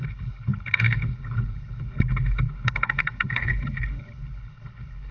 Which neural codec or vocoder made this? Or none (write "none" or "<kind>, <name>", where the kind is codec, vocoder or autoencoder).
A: codec, HILCodec